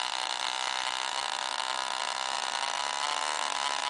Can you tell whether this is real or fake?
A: real